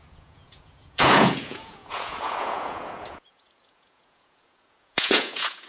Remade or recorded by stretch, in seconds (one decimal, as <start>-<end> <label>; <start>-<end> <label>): 0.0-5.7 remade